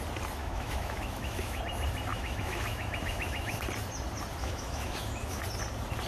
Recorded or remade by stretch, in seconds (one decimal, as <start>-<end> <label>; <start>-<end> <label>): 0.0-0.4 recorded; 0.4-1.6 remade; 1.6-2.1 recorded; 2.1-3.6 remade; 3.6-4.4 recorded; 4.4-5.4 remade; 5.4-6.1 recorded

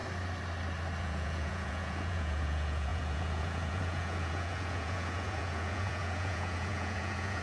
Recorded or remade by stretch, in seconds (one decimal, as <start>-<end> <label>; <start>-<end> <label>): 0.0-1.0 recorded; 1.0-7.4 remade

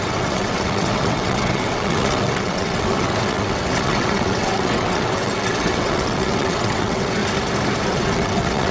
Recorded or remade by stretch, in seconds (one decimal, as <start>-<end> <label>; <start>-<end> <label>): 0.0-7.2 remade; 7.2-7.9 recorded; 7.9-8.7 remade